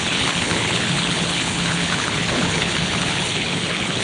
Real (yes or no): no